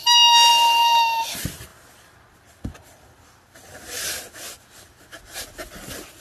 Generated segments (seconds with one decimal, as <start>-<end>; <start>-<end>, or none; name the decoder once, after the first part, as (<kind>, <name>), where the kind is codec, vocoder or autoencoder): none